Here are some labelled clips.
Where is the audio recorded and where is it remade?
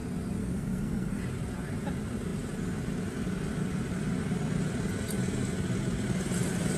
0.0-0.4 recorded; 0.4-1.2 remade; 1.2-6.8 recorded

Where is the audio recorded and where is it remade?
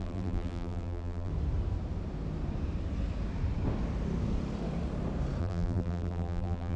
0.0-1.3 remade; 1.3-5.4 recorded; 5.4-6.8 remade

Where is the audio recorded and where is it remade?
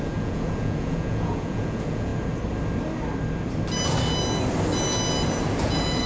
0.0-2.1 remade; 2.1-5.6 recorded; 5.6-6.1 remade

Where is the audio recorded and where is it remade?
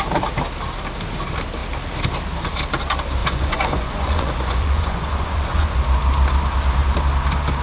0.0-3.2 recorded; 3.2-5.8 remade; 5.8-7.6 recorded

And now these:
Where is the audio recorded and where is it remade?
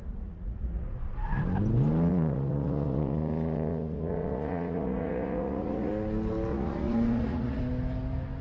0.0-0.8 remade; 0.8-2.1 recorded; 2.1-5.9 remade; 5.9-6.5 recorded; 6.5-7.6 remade; 7.6-8.4 recorded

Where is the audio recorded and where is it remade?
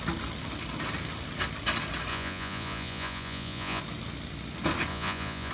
0.0-2.1 recorded; 2.1-3.8 remade; 3.8-4.9 recorded; 4.9-5.5 remade